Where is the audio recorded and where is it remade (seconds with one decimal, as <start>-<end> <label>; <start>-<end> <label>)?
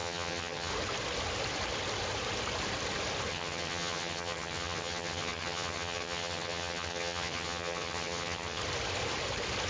0.0-0.7 remade; 0.7-3.3 recorded; 3.3-8.6 remade; 8.6-9.7 recorded